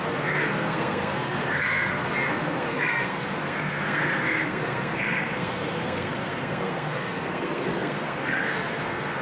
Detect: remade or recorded remade